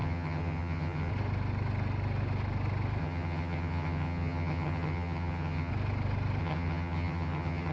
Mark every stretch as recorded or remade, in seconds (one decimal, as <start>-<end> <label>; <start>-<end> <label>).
0.0-1.1 remade; 1.1-3.0 recorded; 3.0-5.7 remade; 5.7-6.4 recorded; 6.4-7.7 remade